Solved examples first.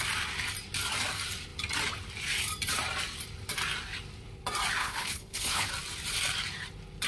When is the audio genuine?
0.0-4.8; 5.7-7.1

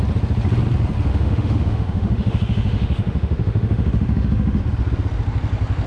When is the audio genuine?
0.0-1.1; 4.6-5.9

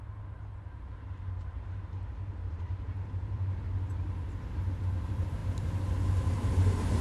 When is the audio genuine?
0.0-0.5; 3.6-7.0

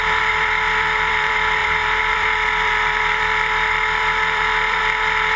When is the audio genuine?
none